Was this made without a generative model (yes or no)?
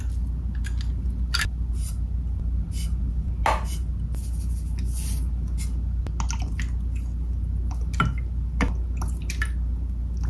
yes